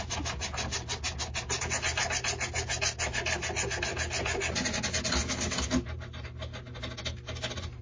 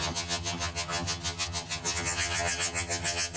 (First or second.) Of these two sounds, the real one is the first